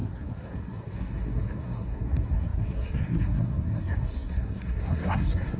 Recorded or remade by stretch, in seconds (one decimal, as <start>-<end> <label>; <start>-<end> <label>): 0.0-5.6 remade